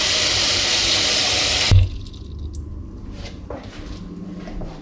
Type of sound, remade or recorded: recorded